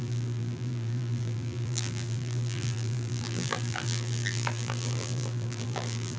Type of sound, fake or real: fake